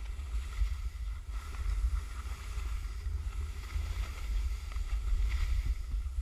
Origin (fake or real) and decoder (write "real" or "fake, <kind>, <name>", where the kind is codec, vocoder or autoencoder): real